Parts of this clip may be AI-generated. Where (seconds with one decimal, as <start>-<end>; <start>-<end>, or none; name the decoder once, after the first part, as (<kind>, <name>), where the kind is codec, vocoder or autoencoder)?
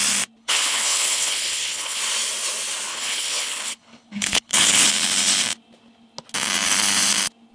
0.4-2.0 (codec, HILCodec); 2.9-4.9